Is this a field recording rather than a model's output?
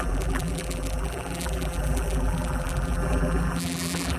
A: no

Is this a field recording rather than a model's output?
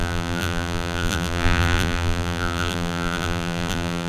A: no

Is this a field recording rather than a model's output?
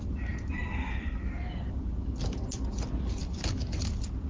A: yes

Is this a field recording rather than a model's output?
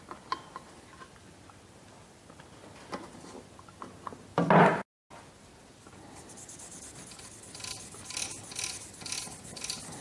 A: yes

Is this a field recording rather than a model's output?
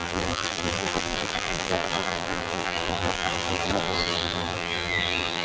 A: no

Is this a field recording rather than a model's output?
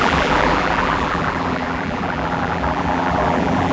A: no